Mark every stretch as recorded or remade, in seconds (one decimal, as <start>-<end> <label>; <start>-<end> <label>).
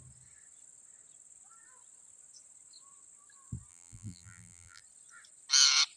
0.0-3.7 recorded; 3.7-4.8 remade; 4.8-6.0 recorded